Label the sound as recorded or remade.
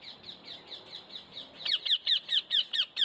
remade